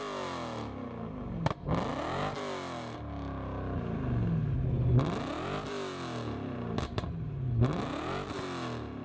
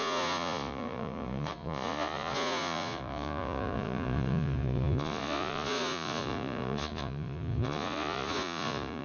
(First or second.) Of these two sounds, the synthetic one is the second